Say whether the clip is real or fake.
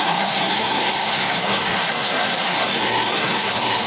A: fake